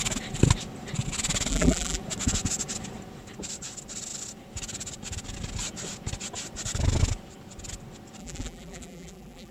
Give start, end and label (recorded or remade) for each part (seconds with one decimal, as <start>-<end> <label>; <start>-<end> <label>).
0.0-1.5 recorded; 1.5-2.0 remade; 2.0-8.2 recorded; 8.2-9.5 remade